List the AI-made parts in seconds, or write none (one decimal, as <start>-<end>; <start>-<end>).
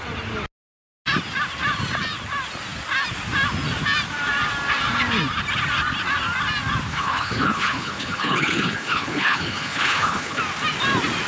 6.9-10.4